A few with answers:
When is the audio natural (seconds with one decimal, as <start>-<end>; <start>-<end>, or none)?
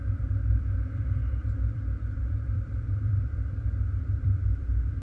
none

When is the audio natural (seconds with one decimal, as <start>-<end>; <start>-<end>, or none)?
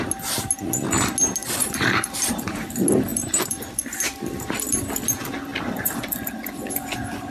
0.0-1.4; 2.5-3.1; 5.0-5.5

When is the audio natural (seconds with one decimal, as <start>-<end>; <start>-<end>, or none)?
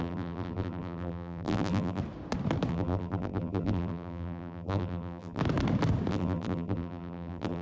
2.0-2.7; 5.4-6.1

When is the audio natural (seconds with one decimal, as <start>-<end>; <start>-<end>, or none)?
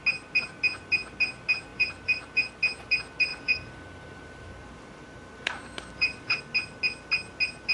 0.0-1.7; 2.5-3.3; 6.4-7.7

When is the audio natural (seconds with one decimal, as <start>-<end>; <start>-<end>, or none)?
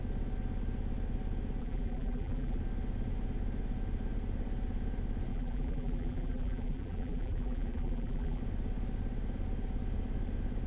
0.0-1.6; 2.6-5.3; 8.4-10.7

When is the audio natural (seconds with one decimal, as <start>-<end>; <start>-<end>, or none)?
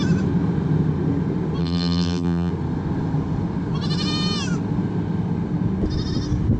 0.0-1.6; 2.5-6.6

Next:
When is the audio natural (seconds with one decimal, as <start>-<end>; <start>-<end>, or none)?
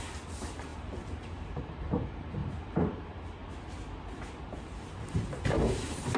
3.4-4.4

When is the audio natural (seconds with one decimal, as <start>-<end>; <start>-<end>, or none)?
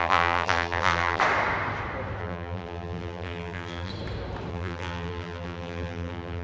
1.2-2.2; 3.9-4.5